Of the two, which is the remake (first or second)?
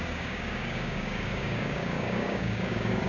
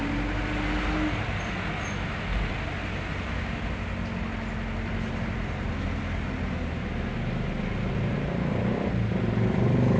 first